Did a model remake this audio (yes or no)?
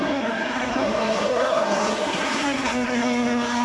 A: yes